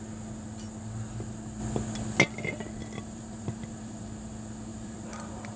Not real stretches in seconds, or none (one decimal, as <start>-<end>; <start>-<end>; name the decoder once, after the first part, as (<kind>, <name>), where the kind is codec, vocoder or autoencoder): 2.8-4.2 (vocoder, BigVGAN v2); 4.7-5.6